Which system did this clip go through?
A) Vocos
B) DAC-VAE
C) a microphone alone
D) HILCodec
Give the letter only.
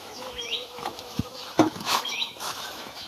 B